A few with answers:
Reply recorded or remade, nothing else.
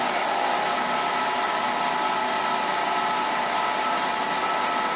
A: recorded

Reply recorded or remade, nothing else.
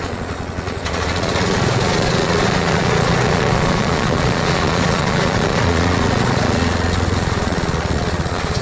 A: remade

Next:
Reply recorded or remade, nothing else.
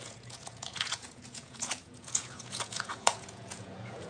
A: remade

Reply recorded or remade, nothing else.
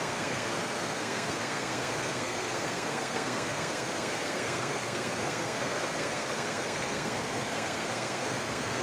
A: remade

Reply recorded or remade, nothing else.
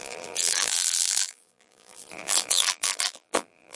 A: remade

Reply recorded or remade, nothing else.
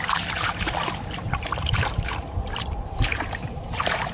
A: remade